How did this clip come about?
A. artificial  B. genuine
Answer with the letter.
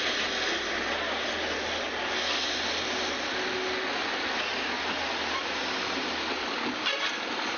B